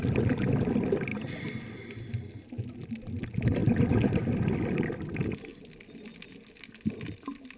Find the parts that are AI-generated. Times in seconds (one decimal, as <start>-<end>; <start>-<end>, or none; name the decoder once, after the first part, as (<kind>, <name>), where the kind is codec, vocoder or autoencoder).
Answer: none